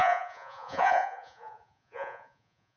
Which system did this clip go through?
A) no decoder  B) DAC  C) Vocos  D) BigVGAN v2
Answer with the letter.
C